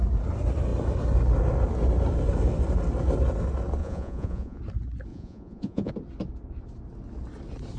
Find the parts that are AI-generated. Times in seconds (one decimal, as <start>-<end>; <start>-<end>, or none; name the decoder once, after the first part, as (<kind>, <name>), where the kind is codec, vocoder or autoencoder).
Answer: 3.8-4.6 (vocoder, Vocos); 5.1-5.9